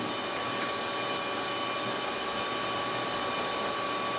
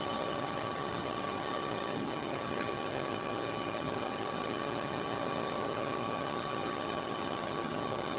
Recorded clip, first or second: first